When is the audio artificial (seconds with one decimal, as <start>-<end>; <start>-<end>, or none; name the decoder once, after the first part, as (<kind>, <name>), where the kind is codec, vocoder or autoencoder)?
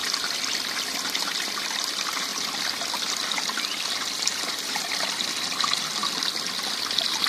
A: 0.0-6.0 (vocoder, BigVGAN v2)